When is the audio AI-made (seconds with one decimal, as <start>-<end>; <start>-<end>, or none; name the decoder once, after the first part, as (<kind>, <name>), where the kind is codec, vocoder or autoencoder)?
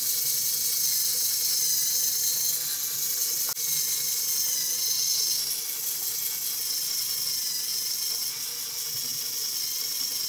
7.7-8.3 (vocoder, BigVGAN v2); 9.1-9.6